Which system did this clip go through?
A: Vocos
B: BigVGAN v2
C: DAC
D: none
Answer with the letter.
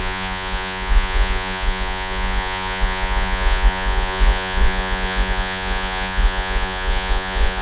A